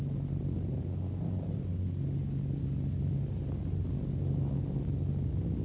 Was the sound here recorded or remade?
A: recorded